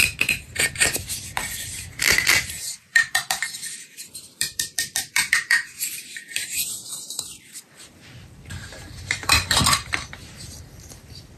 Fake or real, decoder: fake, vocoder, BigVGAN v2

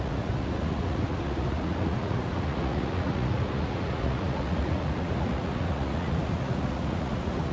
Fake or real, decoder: fake, vocoder, Vocos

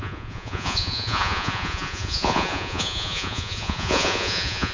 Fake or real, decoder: fake, vocoder, Vocos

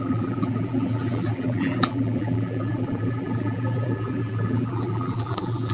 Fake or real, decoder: fake, vocoder, BigVGAN v2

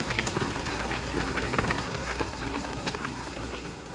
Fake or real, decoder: fake, codec, SNAC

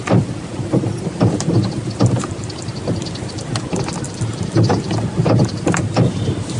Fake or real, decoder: real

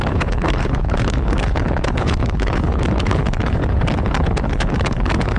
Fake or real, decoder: fake, codec, HILCodec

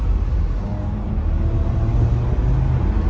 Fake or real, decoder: real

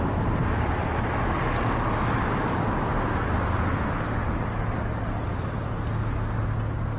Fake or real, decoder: real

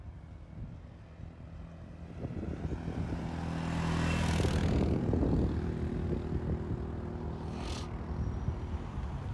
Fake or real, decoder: real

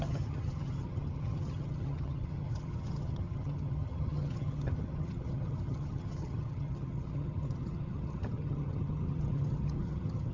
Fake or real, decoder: fake, vocoder, HiFi-GAN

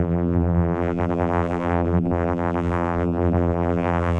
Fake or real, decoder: fake, vocoder, BigVGAN v2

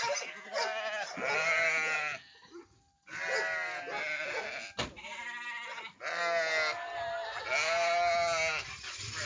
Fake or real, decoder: real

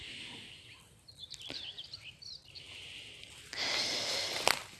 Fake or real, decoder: real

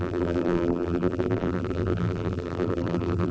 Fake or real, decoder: fake, vocoder, BigVGAN v2